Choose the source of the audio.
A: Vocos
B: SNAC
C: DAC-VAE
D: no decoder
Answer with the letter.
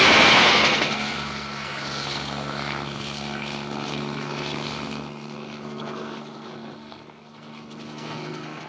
B